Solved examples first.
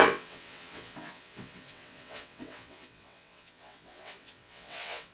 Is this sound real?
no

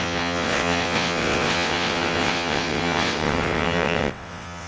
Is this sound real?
no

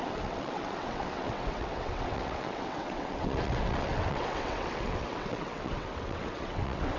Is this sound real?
no